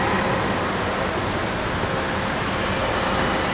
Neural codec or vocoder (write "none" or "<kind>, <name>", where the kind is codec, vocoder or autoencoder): none